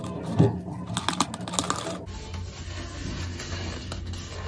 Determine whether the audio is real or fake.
real